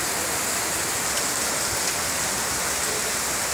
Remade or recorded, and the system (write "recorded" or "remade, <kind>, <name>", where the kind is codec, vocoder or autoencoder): recorded